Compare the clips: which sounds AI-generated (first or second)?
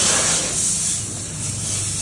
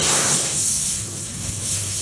second